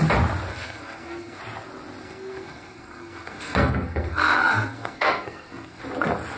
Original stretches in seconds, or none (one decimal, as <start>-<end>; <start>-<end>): 0.0-0.5; 1.4-2.0; 5.8-6.4